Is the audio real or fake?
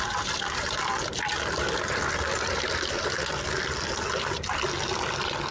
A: real